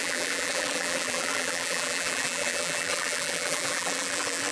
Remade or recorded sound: remade